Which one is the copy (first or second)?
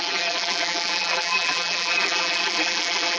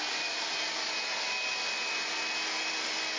first